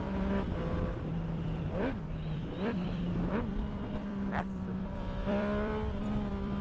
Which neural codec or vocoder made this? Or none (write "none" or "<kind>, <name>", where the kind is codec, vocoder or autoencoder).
vocoder, BigVGAN v2